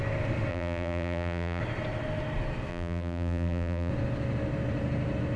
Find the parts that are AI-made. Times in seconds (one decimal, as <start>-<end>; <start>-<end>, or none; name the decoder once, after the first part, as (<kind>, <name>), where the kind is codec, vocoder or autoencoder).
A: 0.5-1.6 (vocoder, BigVGAN v2); 2.7-3.9